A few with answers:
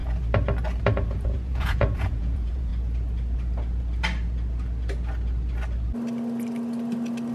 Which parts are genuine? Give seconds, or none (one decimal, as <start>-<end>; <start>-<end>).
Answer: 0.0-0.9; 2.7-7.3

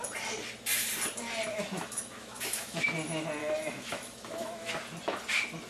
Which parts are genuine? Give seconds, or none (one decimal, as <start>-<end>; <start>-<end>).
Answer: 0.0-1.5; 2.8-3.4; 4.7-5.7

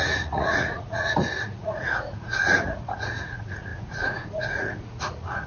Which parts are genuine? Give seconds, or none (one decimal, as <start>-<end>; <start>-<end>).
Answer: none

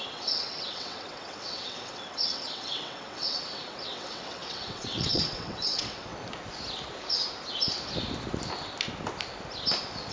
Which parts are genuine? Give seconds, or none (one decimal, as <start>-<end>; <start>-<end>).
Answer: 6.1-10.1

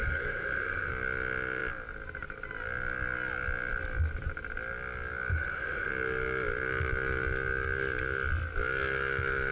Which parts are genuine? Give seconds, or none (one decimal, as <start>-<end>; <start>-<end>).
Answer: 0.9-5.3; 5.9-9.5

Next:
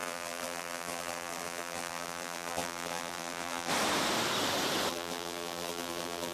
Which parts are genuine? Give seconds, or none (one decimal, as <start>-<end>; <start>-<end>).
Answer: 3.7-4.9

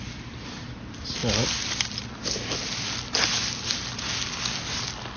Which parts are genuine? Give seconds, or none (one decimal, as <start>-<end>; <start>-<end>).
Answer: 0.0-5.2

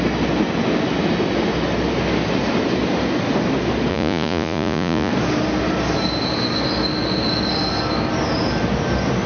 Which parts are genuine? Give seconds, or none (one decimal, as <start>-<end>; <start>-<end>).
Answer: 0.0-3.9; 5.1-9.3